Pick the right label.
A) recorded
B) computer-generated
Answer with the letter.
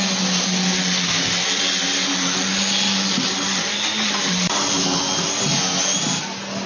A